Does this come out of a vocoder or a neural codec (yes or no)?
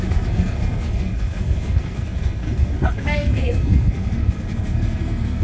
yes